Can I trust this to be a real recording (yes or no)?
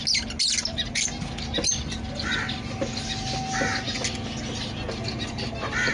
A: yes